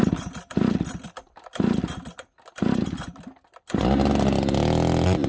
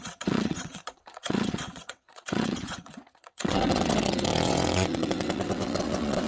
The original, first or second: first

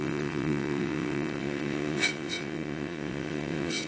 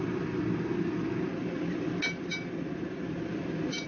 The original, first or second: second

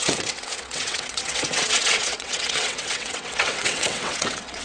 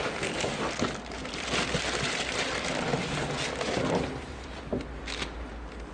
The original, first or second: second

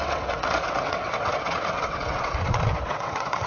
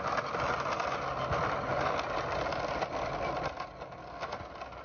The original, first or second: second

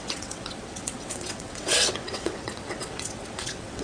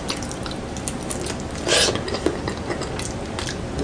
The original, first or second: second